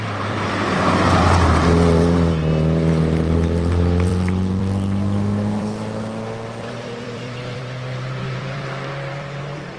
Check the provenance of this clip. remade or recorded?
remade